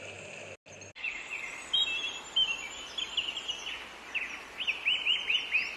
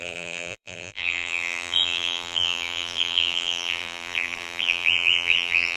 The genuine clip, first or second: first